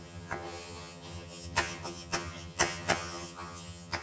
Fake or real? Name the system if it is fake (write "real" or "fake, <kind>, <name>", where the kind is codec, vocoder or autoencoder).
fake, vocoder, HiFi-GAN